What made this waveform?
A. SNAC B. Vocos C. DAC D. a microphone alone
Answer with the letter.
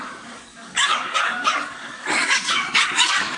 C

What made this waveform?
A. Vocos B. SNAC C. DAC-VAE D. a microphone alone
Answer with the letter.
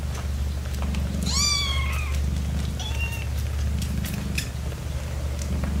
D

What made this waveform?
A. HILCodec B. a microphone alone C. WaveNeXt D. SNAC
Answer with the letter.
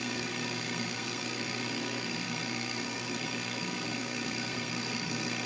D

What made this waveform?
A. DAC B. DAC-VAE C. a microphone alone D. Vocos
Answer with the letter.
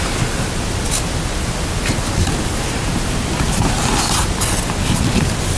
C